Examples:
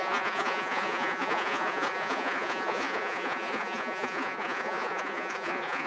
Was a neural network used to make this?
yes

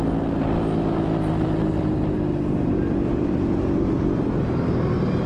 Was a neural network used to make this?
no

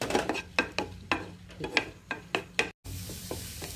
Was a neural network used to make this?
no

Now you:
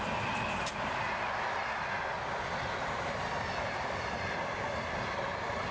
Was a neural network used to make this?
no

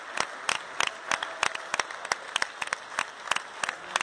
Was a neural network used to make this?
no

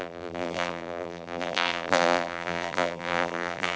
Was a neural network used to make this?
yes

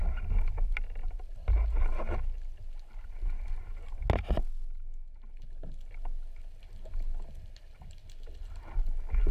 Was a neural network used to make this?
no